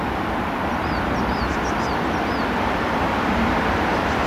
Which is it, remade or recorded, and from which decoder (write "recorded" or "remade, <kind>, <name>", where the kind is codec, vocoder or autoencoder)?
remade, vocoder, BigVGAN v2